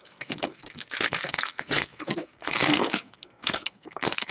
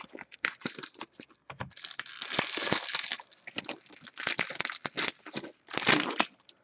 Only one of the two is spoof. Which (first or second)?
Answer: first